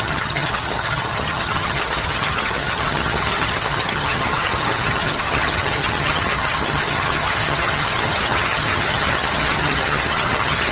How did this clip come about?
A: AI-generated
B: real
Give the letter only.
A